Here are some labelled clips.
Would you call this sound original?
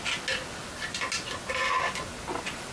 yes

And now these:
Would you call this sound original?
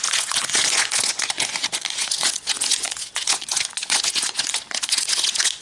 no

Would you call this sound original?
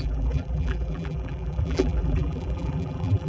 no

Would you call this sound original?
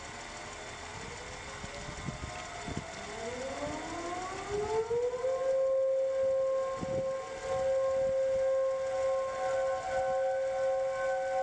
yes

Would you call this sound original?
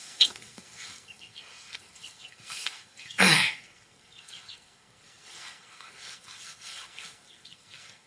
no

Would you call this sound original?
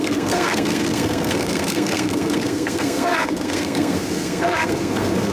no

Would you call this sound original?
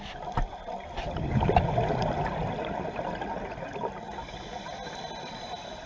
yes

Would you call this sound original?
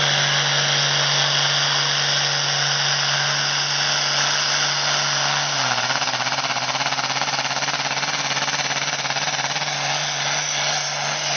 yes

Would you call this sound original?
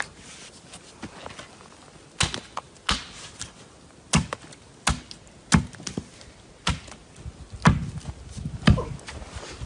yes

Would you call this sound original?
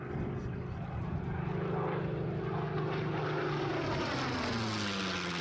yes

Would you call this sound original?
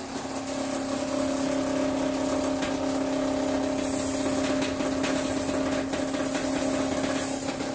yes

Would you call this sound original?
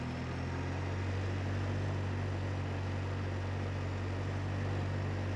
yes